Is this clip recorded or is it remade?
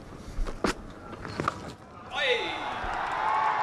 recorded